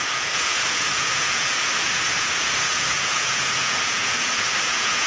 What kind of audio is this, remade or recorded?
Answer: remade